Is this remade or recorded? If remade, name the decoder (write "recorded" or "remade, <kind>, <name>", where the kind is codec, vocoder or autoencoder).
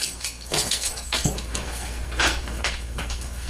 remade, codec, SNAC